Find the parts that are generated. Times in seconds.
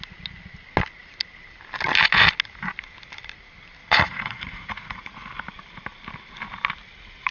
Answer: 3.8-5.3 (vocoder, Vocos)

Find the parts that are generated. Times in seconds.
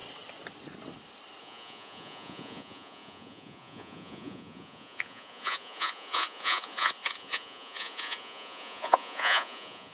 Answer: 1.4-9.9 (vocoder, Vocos)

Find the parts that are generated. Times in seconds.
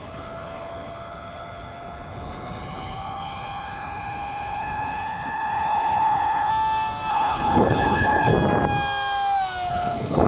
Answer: 0.0-6.5 (codec, HILCodec); 7.1-8.3; 9.7-10.3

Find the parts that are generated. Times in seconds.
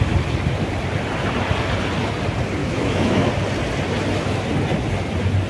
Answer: 2.6-3.3 (autoencoder, DAC-VAE)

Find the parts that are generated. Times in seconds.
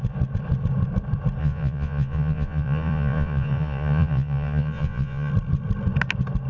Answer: 1.4-5.3 (vocoder, Vocos)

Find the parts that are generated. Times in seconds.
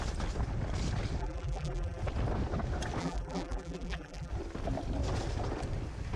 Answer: 1.2-2.0 (vocoder, BigVGAN v2); 3.0-4.3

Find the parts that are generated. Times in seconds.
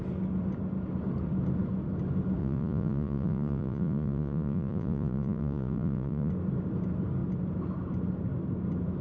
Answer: 2.4-6.3 (vocoder, Vocos)